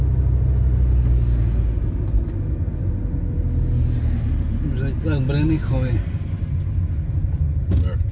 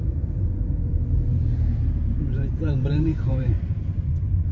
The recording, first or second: first